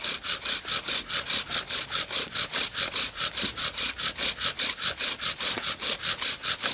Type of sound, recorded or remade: recorded